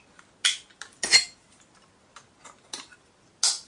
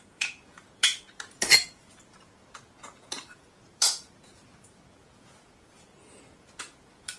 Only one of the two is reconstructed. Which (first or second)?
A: second